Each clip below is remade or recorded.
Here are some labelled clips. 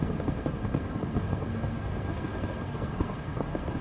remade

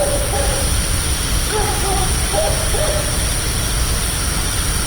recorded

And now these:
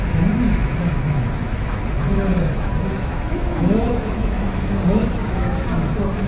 remade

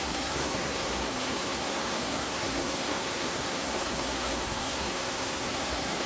remade